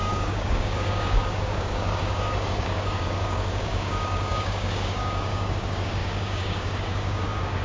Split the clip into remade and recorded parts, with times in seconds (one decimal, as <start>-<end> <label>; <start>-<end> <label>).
0.0-7.6 remade